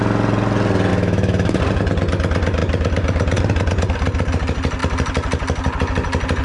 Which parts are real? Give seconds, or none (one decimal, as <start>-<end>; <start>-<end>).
0.0-0.9; 1.6-6.4